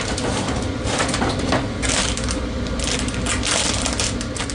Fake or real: real